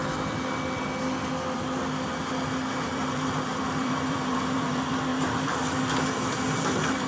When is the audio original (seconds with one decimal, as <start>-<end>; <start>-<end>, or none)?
0.0-2.7